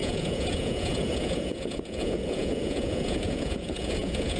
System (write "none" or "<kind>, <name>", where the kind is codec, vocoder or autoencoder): vocoder, Vocos